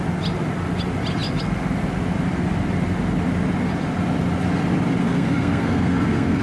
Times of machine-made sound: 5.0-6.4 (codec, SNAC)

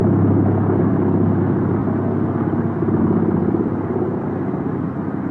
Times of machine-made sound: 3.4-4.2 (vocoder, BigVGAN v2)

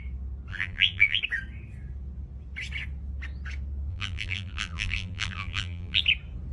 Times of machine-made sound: 0.5-1.2 (vocoder, BigVGAN v2); 3.9-6.0